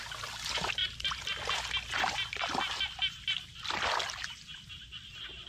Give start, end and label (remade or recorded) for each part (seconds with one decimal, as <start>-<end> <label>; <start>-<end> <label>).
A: 0.0-5.5 recorded